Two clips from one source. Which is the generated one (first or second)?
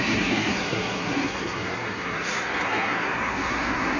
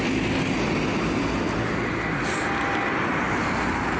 first